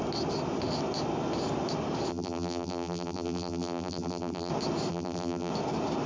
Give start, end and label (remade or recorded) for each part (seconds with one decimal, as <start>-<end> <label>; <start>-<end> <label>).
0.0-2.1 recorded; 2.1-4.5 remade; 4.5-4.9 recorded; 4.9-5.5 remade; 5.5-6.1 recorded

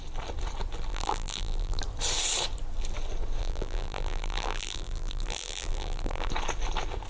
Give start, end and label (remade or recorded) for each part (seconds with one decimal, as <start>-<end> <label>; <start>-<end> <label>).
0.0-0.9 recorded; 0.9-1.8 remade; 1.8-3.4 recorded; 3.4-6.3 remade; 6.3-7.1 recorded

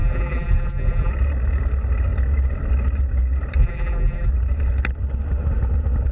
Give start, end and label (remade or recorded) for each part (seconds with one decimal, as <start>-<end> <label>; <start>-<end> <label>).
0.0-1.1 remade; 1.1-3.6 recorded; 3.6-4.3 remade; 4.3-6.1 recorded

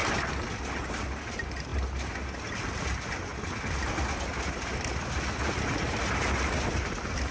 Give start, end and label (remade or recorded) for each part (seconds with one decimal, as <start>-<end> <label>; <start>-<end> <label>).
0.0-3.3 recorded; 3.3-5.7 remade; 5.7-7.3 recorded